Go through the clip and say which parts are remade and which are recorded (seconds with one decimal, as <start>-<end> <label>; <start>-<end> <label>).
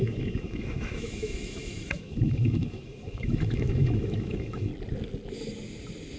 0.0-4.7 remade; 4.7-6.2 recorded